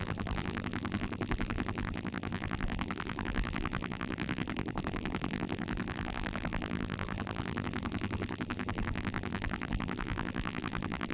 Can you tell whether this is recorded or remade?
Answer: remade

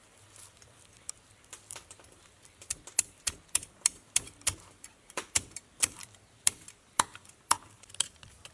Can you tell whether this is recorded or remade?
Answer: remade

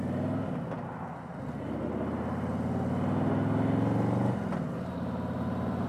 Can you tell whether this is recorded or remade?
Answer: recorded